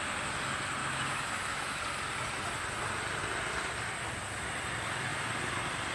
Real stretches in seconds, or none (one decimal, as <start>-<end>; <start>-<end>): 0.0-0.8; 1.8-5.9